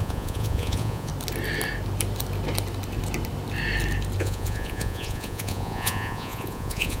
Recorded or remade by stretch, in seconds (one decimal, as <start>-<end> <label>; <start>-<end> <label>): 0.0-1.1 remade; 1.1-4.2 recorded; 4.2-7.0 remade